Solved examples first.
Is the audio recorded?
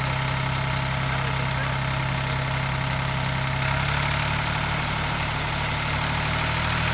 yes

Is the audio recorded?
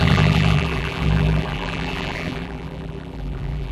no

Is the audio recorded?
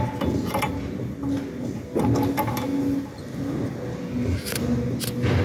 yes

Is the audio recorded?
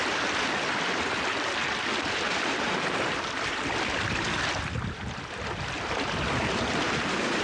yes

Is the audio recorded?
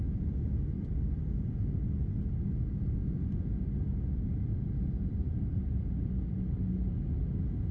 yes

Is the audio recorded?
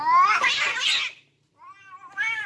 yes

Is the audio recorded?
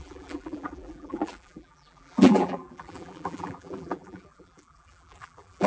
no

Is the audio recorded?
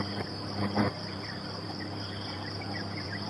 no